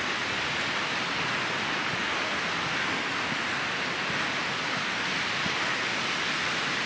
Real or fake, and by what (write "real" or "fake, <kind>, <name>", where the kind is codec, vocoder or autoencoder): real